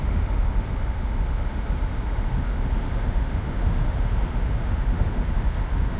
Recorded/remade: remade